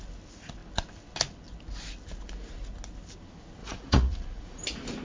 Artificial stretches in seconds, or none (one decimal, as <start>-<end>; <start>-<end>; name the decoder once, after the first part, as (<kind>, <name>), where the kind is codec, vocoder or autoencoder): 3.6-4.6 (vocoder, Vocos)